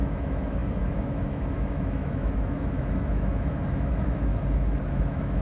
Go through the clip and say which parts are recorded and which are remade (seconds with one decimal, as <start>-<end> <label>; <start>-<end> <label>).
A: 0.0-4.3 remade; 4.3-4.8 recorded; 4.8-5.4 remade